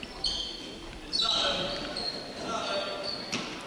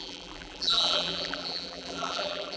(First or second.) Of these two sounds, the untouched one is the first